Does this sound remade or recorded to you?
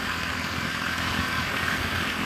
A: remade